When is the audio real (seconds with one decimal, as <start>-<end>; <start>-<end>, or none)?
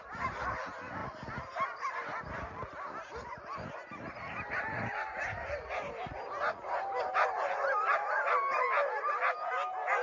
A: 0.0-10.0